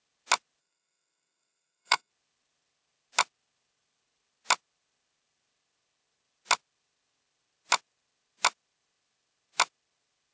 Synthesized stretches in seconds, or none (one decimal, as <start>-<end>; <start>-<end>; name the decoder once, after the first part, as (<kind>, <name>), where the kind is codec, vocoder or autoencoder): 0.6-2.1 (codec, SNAC)